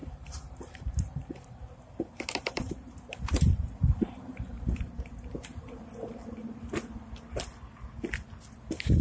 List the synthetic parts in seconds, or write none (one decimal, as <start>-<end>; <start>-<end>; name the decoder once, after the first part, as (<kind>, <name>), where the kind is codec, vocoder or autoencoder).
0.0-5.1 (vocoder, BigVGAN v2)